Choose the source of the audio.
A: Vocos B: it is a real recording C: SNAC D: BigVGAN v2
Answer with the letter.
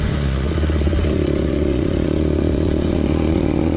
A